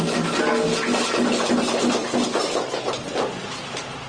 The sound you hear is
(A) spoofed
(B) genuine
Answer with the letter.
B